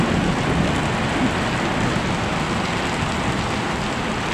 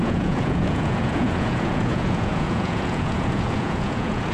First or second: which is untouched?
first